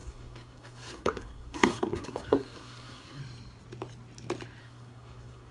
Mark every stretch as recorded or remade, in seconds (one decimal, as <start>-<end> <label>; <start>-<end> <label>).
0.0-3.2 remade; 3.2-4.6 recorded; 4.6-5.5 remade